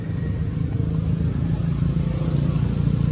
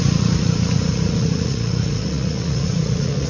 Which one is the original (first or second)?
first